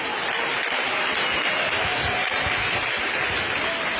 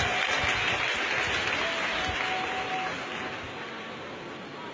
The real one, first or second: second